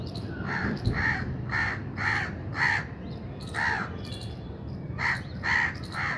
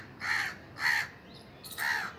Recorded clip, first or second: second